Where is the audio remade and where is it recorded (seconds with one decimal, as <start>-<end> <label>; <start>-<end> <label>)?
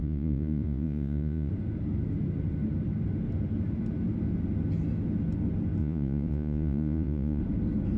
0.0-1.5 remade; 1.5-5.8 recorded; 5.8-7.4 remade; 7.4-8.0 recorded